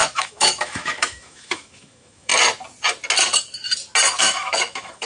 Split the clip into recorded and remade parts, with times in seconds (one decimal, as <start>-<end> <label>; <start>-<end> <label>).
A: 0.0-2.3 remade; 2.3-4.2 recorded; 4.2-5.1 remade